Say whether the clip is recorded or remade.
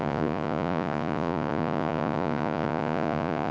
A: remade